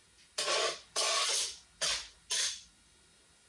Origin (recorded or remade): recorded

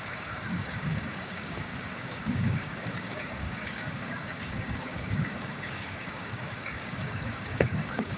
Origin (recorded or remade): remade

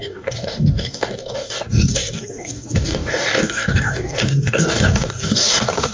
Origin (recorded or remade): remade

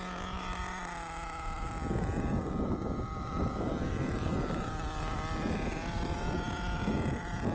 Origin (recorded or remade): recorded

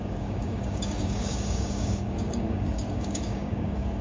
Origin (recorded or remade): remade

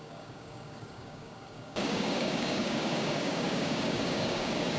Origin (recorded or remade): remade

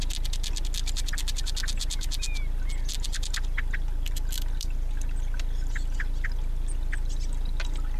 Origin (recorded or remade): recorded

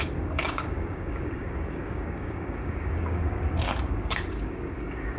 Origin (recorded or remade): remade